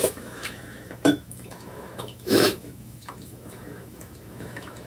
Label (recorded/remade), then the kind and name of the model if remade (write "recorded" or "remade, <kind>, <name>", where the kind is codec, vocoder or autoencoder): remade, autoencoder, DAC-VAE